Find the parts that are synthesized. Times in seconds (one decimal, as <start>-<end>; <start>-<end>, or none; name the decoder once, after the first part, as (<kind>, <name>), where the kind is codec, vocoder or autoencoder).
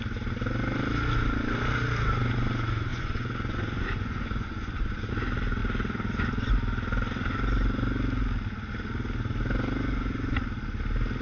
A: 2.9-5.1 (vocoder, Vocos)